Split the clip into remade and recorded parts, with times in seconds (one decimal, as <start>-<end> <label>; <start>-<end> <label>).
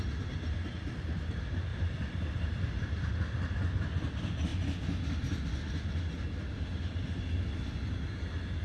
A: 0.0-1.7 recorded; 1.7-3.1 remade; 3.1-8.6 recorded